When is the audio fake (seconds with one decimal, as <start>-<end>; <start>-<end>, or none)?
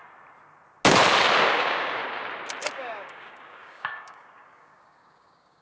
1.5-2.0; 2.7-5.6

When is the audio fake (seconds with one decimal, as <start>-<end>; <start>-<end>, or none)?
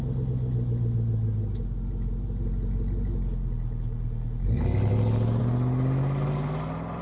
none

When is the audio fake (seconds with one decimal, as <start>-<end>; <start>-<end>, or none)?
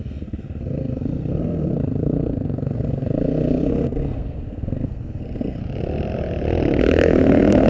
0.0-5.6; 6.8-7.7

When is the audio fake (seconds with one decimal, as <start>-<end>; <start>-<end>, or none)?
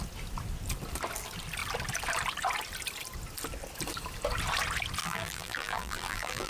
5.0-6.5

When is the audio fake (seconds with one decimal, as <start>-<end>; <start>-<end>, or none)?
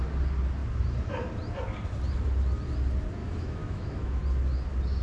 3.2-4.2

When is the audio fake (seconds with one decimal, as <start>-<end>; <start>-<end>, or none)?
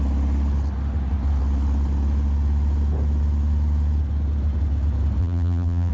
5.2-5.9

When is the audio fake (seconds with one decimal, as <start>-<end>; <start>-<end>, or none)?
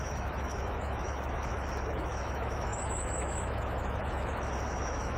0.0-5.2